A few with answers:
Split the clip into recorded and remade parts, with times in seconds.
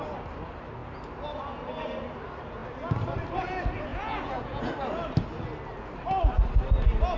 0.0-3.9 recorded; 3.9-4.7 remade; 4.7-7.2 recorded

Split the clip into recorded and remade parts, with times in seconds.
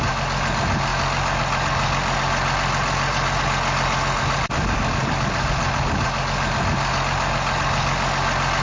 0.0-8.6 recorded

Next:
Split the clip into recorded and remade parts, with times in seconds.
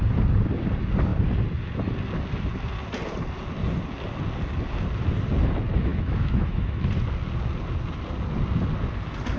0.0-5.9 recorded; 5.9-6.9 remade; 6.9-9.4 recorded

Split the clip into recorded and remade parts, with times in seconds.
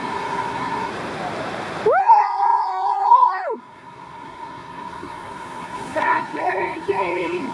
0.0-0.9 remade; 0.9-2.0 recorded; 2.0-7.5 remade